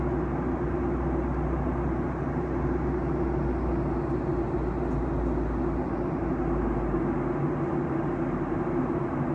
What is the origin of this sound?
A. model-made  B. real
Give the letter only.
B